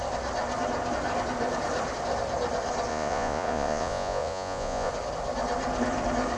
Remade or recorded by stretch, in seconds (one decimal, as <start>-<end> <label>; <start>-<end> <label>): 0.0-2.9 recorded; 2.9-4.9 remade; 4.9-6.4 recorded